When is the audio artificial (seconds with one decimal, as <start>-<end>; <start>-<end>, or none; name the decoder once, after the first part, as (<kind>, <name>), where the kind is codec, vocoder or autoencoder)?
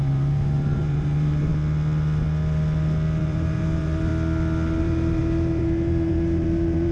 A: 0.0-1.5 (vocoder, BigVGAN v2); 3.2-4.1; 4.8-6.9